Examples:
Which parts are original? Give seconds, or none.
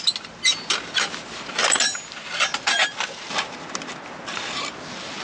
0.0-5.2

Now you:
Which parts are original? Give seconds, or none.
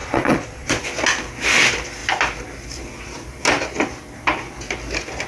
0.8-5.3